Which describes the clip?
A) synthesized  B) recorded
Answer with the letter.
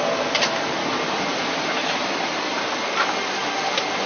B